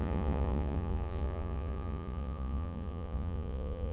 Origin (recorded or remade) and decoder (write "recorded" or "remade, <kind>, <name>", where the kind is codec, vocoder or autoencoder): remade, vocoder, Vocos